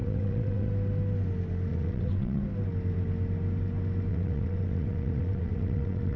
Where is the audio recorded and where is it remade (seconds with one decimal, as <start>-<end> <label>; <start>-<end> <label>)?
0.0-0.7 remade; 0.7-1.7 recorded; 1.7-2.4 remade; 2.4-4.1 recorded; 4.1-6.2 remade